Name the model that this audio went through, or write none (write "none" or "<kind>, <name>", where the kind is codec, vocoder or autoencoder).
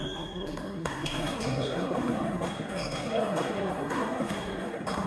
codec, SNAC